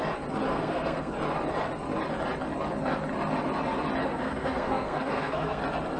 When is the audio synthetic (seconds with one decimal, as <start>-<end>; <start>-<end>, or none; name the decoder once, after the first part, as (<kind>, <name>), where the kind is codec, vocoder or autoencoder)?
0.5-1.1 (codec, SNAC); 4.0-5.6